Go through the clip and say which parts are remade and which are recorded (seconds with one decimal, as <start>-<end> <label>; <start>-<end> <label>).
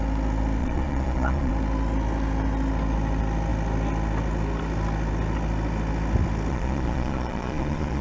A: 0.0-0.6 recorded; 0.6-1.5 remade; 1.5-6.5 recorded; 6.5-8.0 remade